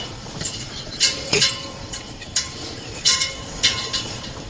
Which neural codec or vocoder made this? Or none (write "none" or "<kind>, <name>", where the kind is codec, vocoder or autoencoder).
vocoder, Vocos